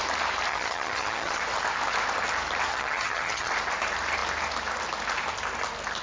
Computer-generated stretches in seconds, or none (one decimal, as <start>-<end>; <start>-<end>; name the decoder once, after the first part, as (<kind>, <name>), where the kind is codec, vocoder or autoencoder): 0.5-1.4 (vocoder, HiFi-GAN); 2.7-3.5